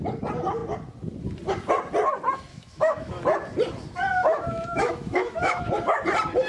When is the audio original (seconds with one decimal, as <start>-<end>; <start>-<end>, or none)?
0.0-2.5; 3.2-4.2; 5.6-6.5